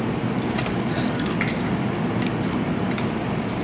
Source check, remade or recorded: recorded